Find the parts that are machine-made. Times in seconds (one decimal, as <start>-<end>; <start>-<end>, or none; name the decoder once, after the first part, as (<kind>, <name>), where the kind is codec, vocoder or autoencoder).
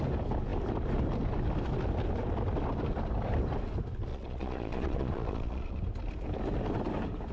4.1-5.8 (vocoder, Vocos)